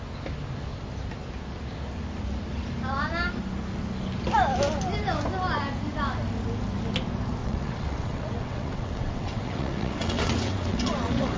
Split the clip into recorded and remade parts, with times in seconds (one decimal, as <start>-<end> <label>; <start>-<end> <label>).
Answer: 0.0-7.4 recorded; 7.4-11.4 remade